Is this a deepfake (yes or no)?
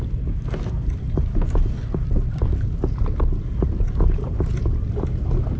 no